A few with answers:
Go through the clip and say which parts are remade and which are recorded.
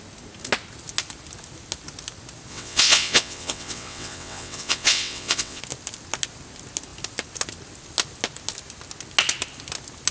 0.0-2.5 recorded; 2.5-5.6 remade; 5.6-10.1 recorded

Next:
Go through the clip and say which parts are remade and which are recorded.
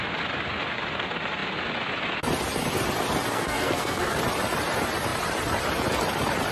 0.0-3.3 recorded; 3.3-4.2 remade; 4.2-6.5 recorded